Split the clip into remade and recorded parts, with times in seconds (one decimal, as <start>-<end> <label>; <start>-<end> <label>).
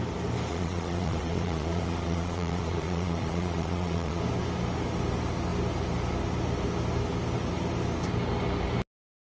0.0-0.5 recorded; 0.5-4.2 remade; 4.2-9.4 recorded